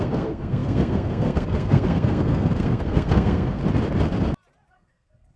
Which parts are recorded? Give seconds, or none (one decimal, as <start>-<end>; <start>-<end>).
3.6-4.7

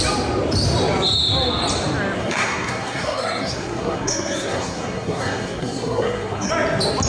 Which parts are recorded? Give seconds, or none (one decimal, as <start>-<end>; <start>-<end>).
0.0-2.2; 6.5-7.1

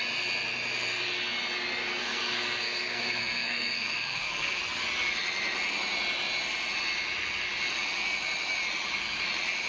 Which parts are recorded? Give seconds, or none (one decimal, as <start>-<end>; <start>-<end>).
0.0-2.0; 4.6-9.7